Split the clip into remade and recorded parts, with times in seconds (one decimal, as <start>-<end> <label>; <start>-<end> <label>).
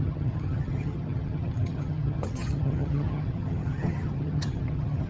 0.0-5.1 remade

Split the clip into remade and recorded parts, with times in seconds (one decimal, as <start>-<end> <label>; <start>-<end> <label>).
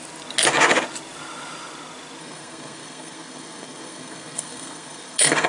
0.0-2.2 recorded; 2.2-5.5 remade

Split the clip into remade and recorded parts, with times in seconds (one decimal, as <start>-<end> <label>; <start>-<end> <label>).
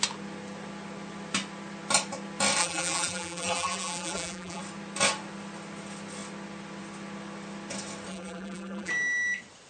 0.0-2.6 recorded; 2.6-4.6 remade; 4.6-8.1 recorded; 8.1-8.9 remade; 8.9-9.7 recorded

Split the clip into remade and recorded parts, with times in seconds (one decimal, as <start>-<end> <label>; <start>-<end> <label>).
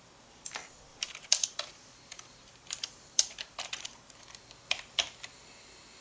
0.0-0.9 recorded; 0.9-4.5 remade; 4.5-6.0 recorded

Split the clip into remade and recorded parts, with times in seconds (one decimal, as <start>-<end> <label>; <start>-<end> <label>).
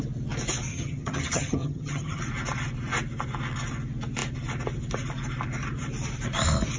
0.0-0.7 recorded; 0.7-2.2 remade; 2.2-6.8 recorded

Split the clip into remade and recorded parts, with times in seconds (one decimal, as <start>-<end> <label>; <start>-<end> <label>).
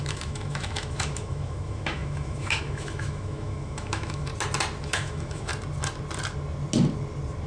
0.0-4.3 remade; 4.3-4.8 recorded; 4.8-5.5 remade; 5.5-7.5 recorded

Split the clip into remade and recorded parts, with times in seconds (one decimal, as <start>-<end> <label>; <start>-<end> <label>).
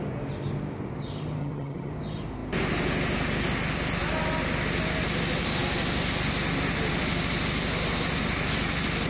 0.0-1.4 recorded; 1.4-1.9 remade; 1.9-9.1 recorded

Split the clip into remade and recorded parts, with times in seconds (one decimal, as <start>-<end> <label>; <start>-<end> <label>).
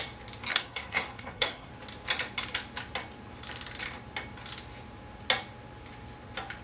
0.0-0.5 recorded; 0.5-1.7 remade; 1.7-6.6 recorded